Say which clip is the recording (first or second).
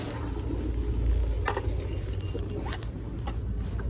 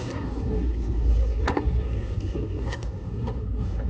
first